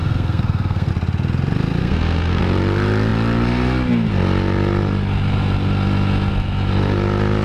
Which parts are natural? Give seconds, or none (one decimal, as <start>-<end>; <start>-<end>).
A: 0.9-1.8; 2.4-7.4